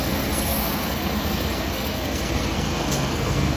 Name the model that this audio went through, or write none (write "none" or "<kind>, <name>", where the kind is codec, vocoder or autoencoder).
codec, SNAC